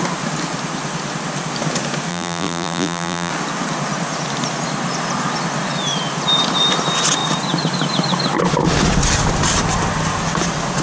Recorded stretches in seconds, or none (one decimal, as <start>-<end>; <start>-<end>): 0.0-2.1; 3.3-10.8